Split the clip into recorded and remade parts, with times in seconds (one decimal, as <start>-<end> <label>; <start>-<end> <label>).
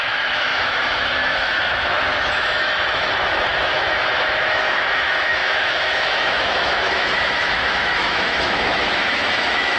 0.0-9.8 remade